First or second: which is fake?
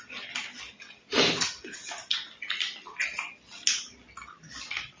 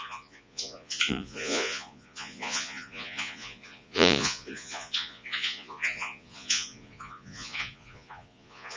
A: second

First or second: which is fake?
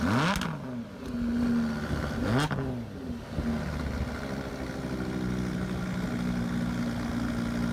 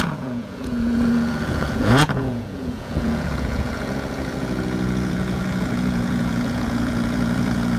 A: second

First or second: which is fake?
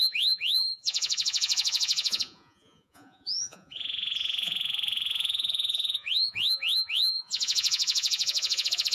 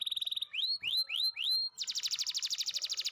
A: first